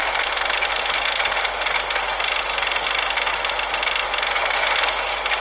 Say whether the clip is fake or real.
real